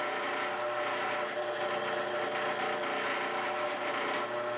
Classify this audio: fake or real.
real